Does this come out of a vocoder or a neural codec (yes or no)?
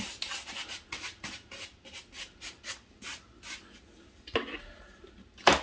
no